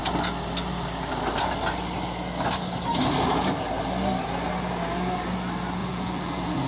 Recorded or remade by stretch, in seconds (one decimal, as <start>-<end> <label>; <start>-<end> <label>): 0.0-5.8 recorded; 5.8-6.7 remade